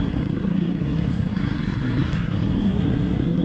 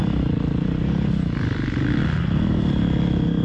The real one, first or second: second